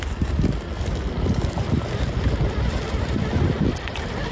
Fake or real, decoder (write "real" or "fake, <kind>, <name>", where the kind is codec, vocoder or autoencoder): real